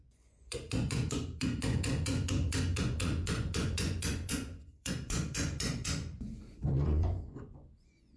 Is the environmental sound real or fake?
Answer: fake